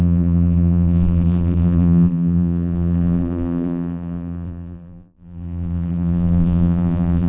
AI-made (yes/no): yes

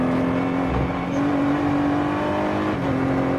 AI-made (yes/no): no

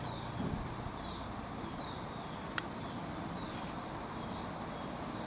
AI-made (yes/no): no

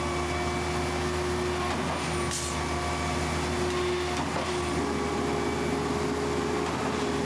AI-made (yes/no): no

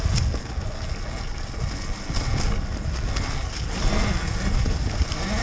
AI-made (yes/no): no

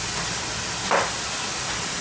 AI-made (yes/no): no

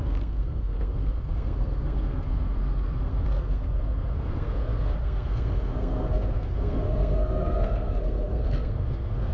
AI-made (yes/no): yes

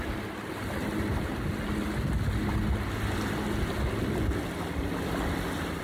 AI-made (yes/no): no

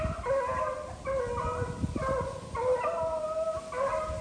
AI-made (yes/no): no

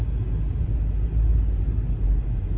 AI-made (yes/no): no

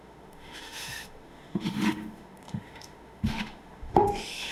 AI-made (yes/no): yes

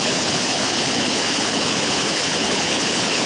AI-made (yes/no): yes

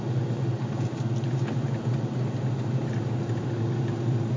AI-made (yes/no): no